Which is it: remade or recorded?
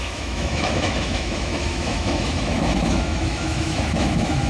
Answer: remade